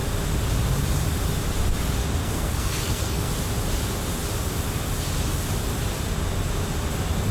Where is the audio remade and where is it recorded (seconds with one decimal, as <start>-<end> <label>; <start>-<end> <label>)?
0.0-2.2 recorded; 2.2-3.3 remade; 3.3-7.3 recorded